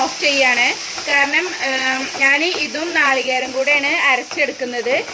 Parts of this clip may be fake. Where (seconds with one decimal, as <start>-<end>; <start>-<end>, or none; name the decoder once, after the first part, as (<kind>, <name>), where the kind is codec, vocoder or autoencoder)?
1.1-3.6 (vocoder, WaveNeXt)